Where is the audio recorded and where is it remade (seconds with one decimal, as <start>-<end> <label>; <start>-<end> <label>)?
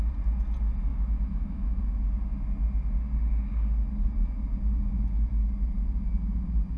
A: 0.0-0.9 recorded; 0.9-1.8 remade; 1.8-6.8 recorded